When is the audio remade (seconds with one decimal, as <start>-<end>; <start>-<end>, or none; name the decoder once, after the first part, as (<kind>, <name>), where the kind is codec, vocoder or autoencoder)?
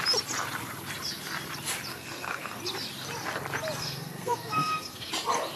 1.9-2.6 (codec, SNAC); 3.8-5.1